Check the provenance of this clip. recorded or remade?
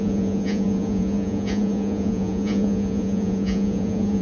remade